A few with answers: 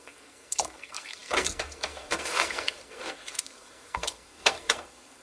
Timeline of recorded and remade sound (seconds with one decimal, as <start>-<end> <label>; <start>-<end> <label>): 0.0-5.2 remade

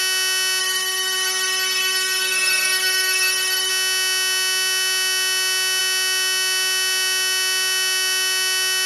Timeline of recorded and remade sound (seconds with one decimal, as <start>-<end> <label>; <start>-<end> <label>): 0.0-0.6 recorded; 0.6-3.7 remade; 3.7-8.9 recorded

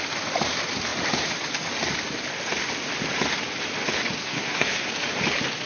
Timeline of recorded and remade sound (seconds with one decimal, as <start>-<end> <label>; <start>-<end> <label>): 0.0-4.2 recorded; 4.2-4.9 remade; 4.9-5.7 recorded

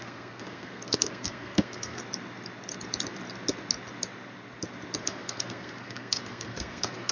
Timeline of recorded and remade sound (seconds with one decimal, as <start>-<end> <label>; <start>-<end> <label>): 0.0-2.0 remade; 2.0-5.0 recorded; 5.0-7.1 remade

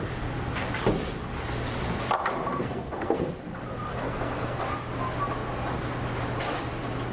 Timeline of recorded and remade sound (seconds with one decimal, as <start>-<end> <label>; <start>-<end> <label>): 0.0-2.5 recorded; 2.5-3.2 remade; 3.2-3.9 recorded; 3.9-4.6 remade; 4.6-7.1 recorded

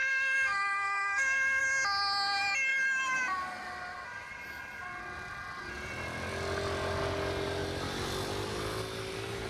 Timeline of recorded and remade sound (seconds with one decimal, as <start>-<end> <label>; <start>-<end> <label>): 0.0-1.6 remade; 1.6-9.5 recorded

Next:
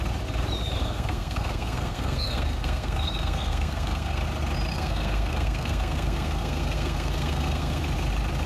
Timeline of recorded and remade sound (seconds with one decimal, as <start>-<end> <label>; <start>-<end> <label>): 0.0-0.8 recorded; 0.8-4.2 remade; 4.2-4.7 recorded; 4.7-7.8 remade; 7.8-8.5 recorded

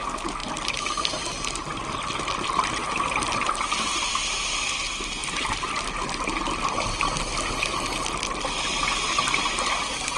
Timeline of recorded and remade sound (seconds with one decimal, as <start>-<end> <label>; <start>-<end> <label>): 0.0-10.2 recorded